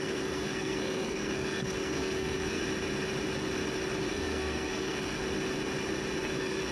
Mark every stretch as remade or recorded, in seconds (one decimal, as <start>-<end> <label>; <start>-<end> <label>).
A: 0.0-2.6 remade; 2.6-4.1 recorded; 4.1-5.2 remade; 5.2-6.2 recorded; 6.2-6.7 remade